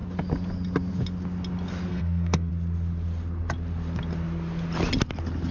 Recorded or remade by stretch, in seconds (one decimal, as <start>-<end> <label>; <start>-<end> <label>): 0.0-1.9 recorded; 1.9-2.5 remade; 2.5-5.5 recorded